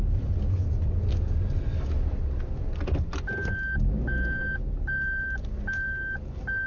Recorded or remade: recorded